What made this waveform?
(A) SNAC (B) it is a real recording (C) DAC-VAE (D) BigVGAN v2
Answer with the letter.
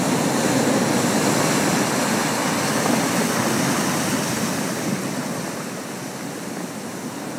B